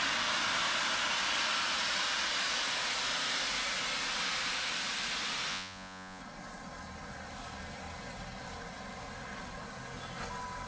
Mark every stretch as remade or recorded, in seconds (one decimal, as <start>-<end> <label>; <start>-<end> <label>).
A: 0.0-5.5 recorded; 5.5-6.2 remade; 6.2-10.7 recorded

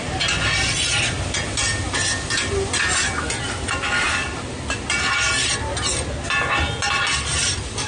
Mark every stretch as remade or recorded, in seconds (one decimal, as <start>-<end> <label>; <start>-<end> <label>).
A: 0.0-7.9 recorded

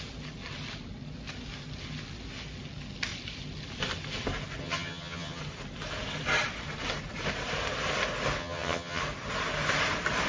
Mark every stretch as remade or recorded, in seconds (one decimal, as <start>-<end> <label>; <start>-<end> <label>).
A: 0.0-4.6 recorded; 4.6-5.4 remade; 5.4-8.4 recorded; 8.4-9.0 remade; 9.0-10.3 recorded

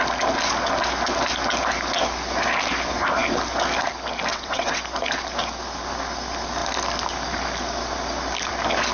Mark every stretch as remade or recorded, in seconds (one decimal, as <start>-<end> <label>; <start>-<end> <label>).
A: 0.0-4.3 recorded; 4.3-4.8 remade; 4.8-8.9 recorded

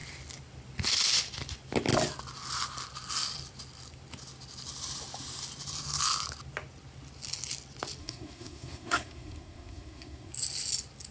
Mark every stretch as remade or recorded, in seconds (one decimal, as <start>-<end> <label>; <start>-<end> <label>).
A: 0.0-8.0 recorded; 8.0-10.3 remade; 10.3-11.1 recorded

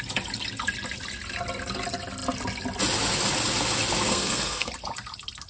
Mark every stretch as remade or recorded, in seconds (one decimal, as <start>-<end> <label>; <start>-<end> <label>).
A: 0.0-4.1 recorded; 4.1-4.7 remade; 4.7-5.5 recorded